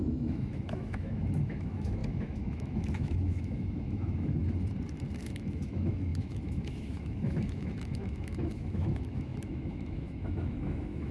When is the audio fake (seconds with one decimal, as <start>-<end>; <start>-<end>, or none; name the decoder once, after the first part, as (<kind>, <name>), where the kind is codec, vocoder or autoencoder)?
0.0-4.4 (autoencoder, DAC-VAE); 5.2-11.1